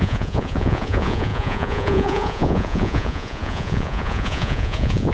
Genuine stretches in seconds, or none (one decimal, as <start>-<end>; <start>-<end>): none